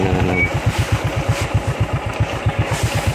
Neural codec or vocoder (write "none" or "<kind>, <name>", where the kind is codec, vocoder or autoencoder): none